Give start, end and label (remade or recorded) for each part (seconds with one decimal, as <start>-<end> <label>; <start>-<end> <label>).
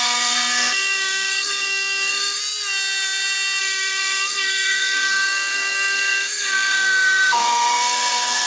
0.0-2.4 remade; 2.4-3.6 recorded; 3.6-8.5 remade